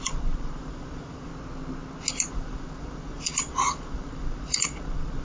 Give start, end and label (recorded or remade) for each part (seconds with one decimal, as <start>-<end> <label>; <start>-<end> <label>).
0.0-1.3 remade; 1.3-2.3 recorded; 2.3-5.2 remade